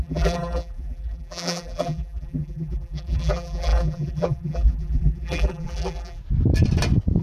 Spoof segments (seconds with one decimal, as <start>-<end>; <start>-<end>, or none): 0.0-6.2